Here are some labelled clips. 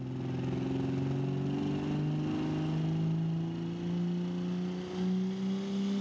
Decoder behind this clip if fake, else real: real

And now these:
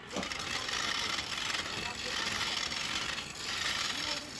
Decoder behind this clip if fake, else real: real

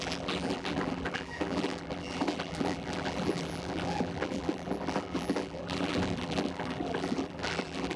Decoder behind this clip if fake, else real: fake, vocoder, BigVGAN v2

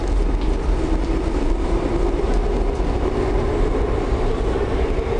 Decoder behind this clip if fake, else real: real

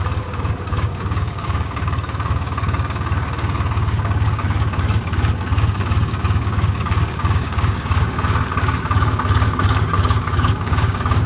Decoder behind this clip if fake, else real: fake, codec, DAC